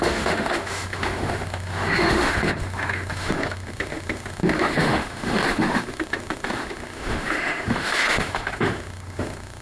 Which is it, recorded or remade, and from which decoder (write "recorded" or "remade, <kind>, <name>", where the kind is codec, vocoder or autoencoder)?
remade, autoencoder, DAC-VAE